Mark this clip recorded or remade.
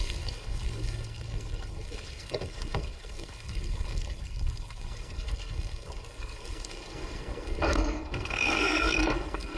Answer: remade